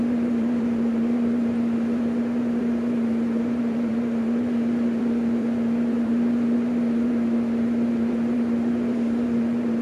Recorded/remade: remade